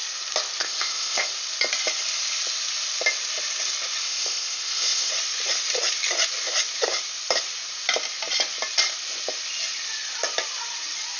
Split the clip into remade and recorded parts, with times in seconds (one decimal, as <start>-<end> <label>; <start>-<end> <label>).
0.0-0.6 recorded; 0.6-1.3 remade; 1.3-4.0 recorded; 4.0-5.1 remade; 5.1-11.2 recorded